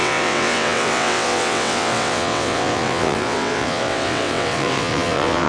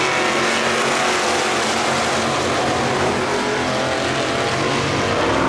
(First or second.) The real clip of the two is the second